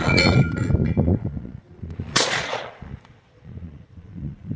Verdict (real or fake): fake